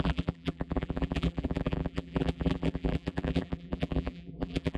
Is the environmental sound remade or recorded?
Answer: remade